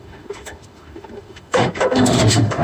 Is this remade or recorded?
remade